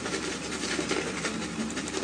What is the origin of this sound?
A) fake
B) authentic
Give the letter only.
B